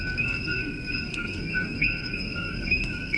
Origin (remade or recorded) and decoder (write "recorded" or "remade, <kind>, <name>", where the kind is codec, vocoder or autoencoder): remade, codec, SNAC